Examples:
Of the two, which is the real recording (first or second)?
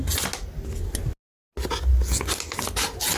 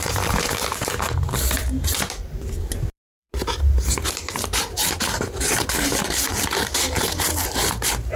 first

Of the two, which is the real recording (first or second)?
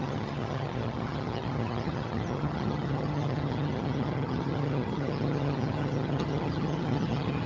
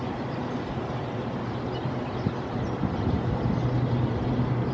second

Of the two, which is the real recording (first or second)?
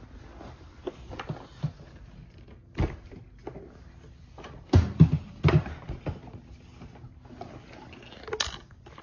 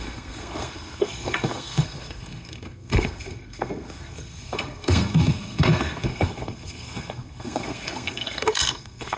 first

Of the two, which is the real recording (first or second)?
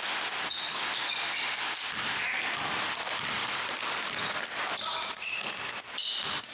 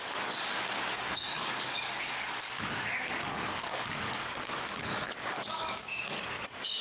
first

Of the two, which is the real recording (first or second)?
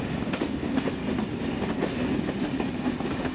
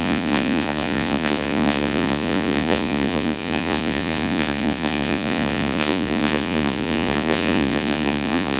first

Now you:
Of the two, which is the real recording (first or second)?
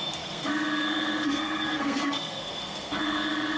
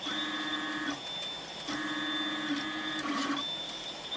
second